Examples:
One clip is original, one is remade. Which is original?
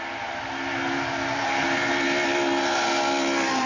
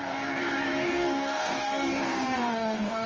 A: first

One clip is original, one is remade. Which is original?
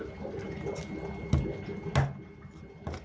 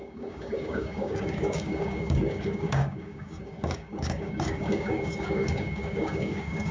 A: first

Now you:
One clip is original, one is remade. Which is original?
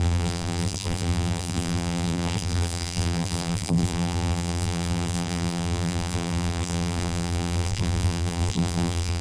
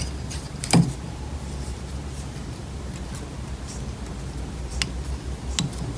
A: second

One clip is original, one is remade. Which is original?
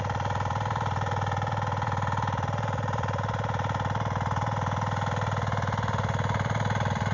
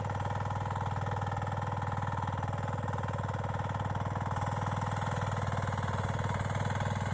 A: second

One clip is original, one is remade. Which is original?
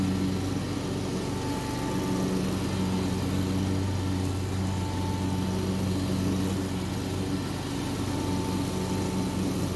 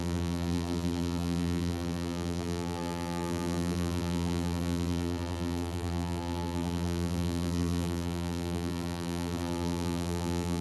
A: first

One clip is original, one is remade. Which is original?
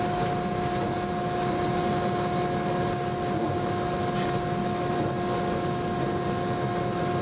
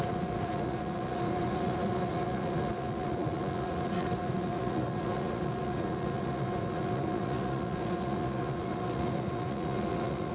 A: first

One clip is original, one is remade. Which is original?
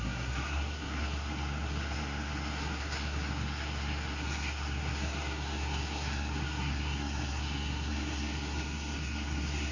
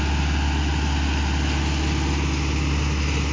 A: second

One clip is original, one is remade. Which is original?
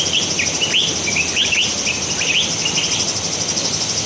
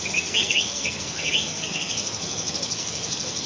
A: first